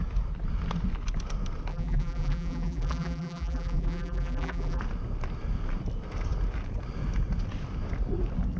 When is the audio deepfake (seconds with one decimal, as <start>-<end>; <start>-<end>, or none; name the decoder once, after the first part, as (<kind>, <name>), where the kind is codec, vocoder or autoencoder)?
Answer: 1.7-4.8 (vocoder, BigVGAN v2)